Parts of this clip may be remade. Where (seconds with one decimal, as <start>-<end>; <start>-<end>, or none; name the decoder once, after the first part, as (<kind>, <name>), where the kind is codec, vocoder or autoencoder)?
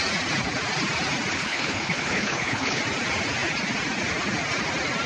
1.3-2.8 (codec, HILCodec)